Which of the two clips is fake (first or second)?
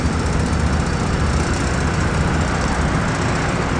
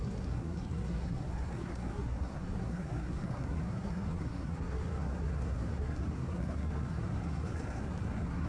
second